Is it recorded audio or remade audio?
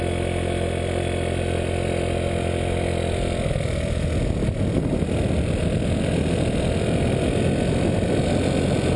recorded